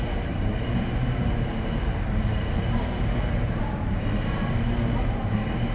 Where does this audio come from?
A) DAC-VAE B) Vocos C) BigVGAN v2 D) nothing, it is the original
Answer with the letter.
C